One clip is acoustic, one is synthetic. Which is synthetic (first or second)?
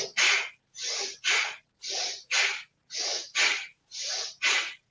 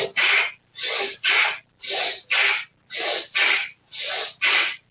first